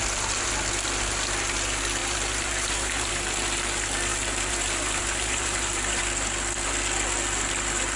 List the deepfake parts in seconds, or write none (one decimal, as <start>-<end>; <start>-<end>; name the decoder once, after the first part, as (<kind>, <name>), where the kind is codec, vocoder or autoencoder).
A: 2.0-3.1 (vocoder, BigVGAN v2); 4.1-6.0